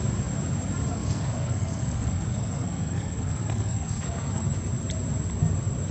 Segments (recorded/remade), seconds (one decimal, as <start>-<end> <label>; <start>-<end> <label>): 0.0-0.9 recorded; 0.9-4.4 remade; 4.4-5.9 recorded